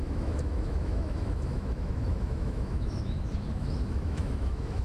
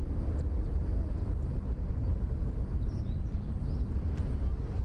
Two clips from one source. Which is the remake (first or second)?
first